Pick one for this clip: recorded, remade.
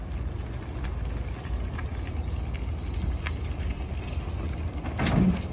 recorded